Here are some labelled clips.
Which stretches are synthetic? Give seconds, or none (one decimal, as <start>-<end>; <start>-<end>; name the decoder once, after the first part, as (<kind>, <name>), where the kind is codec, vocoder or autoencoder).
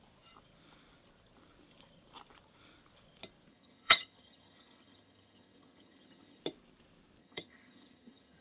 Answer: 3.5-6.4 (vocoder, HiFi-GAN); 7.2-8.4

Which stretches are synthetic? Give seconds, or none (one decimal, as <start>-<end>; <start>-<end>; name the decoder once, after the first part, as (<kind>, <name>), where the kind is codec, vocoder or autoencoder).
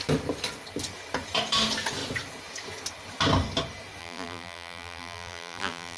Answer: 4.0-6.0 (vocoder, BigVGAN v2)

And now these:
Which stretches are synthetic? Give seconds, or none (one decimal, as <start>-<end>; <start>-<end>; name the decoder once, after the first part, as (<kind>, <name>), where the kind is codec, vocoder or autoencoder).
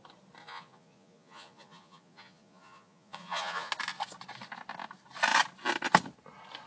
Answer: 0.4-3.7 (vocoder, Vocos)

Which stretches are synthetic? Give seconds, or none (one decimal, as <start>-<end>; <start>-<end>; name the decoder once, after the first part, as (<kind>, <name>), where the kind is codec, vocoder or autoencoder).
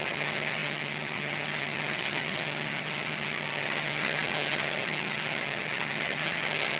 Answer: 0.0-6.8 (vocoder, HiFi-GAN)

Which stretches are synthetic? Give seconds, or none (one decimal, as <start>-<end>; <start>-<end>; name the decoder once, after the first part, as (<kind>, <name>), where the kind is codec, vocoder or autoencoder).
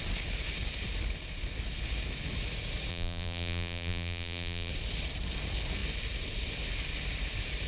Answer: 2.9-4.7 (vocoder, BigVGAN v2)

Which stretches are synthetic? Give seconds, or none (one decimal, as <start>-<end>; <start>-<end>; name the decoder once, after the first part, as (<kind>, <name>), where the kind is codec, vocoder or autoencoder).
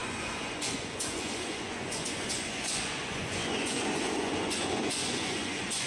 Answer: 0.0-5.9 (vocoder, Vocos)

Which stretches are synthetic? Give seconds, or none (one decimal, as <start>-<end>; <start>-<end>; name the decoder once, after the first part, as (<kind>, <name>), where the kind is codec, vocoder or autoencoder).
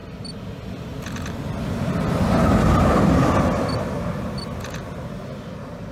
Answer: none